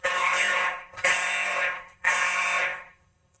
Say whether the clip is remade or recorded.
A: remade